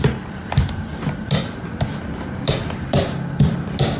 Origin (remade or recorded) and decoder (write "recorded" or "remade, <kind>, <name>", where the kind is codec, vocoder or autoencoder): recorded